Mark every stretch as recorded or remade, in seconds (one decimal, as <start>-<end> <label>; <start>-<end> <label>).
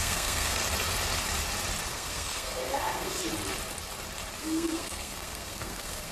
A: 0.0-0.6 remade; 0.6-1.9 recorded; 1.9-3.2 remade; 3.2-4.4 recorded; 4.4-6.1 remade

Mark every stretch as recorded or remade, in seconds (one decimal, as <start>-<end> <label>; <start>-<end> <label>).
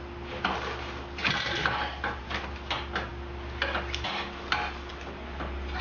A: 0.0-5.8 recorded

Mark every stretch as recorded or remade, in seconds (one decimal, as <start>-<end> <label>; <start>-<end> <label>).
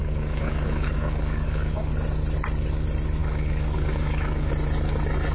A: 0.0-1.9 remade; 1.9-3.2 recorded; 3.2-4.5 remade; 4.5-5.3 recorded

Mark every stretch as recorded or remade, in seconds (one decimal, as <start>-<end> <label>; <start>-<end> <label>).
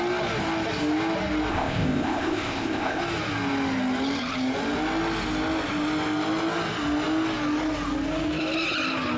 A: 0.0-1.5 recorded; 1.5-3.0 remade; 3.0-9.2 recorded